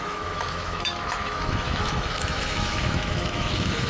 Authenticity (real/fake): fake